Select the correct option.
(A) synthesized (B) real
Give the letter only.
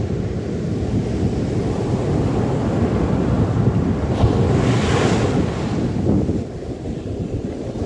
B